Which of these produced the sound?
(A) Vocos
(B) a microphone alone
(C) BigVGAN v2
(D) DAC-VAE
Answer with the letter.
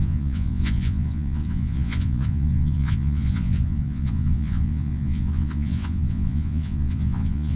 A